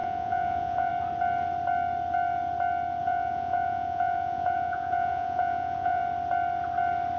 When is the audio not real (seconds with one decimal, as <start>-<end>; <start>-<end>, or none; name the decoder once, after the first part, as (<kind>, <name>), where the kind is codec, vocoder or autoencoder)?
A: 0.0-0.9 (vocoder, Vocos); 3.0-6.0